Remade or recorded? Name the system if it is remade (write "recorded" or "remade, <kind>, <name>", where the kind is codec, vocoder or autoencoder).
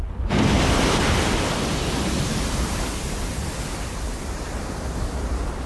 recorded